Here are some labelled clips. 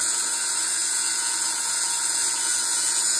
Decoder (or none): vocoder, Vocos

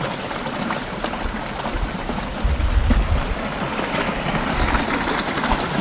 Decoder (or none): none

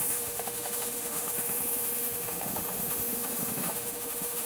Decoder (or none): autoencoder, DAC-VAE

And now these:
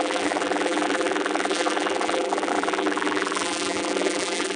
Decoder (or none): vocoder, BigVGAN v2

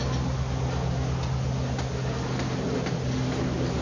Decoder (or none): none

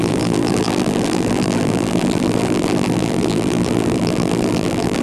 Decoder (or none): vocoder, BigVGAN v2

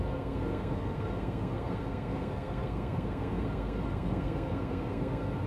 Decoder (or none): codec, SNAC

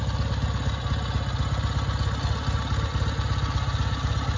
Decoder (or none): none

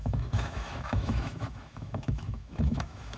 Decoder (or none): autoencoder, DAC-VAE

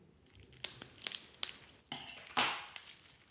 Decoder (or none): none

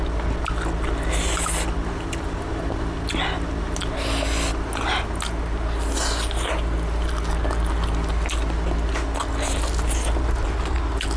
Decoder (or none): none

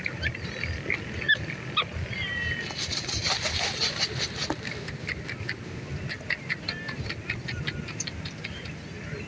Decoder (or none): none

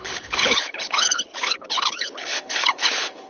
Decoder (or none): codec, HILCodec